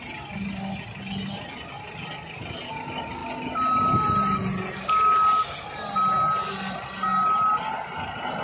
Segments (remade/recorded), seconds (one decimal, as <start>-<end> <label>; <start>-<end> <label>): 0.0-8.4 recorded